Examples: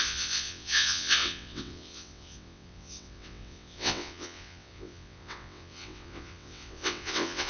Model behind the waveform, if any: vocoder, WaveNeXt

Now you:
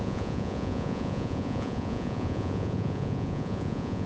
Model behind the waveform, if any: vocoder, Vocos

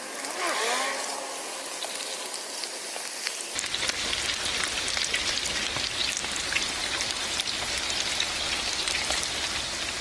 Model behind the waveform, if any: none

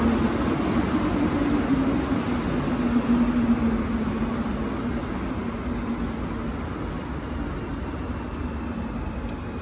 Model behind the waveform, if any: none